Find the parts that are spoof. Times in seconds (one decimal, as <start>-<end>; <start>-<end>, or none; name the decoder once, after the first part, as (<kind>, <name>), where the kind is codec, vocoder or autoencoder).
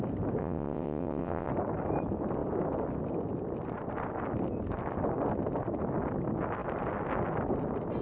0.4-1.5 (vocoder, WaveNeXt)